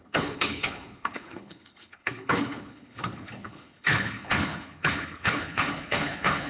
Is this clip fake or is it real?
fake